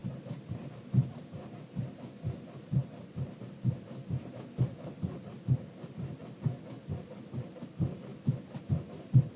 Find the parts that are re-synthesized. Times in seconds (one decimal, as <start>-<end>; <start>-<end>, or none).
0.0-0.8; 2.8-3.8